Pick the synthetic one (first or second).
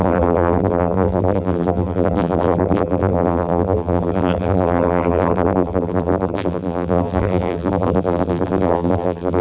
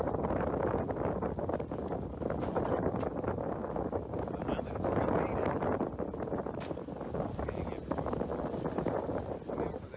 first